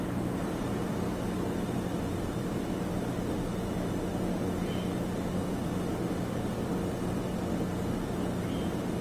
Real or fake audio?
real